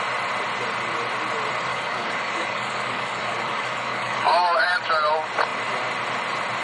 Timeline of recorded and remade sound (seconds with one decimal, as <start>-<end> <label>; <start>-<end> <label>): 0.0-1.7 recorded; 1.7-4.7 remade; 4.7-6.6 recorded

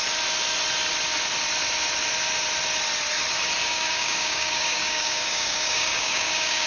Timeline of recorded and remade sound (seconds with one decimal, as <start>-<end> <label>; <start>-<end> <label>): 0.0-3.6 recorded; 3.6-6.7 remade

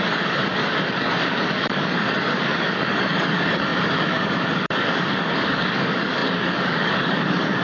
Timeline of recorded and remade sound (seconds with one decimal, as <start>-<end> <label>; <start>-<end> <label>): 0.0-7.6 remade